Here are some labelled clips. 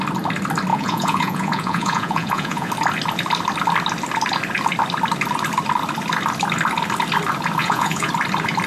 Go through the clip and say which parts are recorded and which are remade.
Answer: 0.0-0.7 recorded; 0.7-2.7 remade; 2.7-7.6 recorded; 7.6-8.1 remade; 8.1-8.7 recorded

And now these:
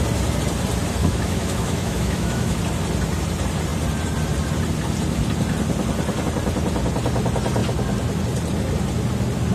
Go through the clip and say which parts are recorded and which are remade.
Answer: 0.0-1.0 recorded; 1.0-2.6 remade; 2.6-9.5 recorded